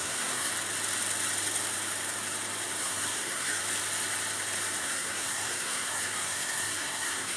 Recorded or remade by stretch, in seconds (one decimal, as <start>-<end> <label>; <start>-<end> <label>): 0.0-0.5 remade; 0.5-2.8 recorded; 2.8-3.6 remade; 3.6-4.8 recorded; 4.8-7.4 remade